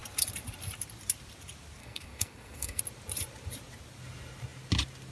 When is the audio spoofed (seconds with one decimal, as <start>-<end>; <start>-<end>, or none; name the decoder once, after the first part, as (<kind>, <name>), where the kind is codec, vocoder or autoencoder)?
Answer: 1.8-2.8 (codec, SNAC)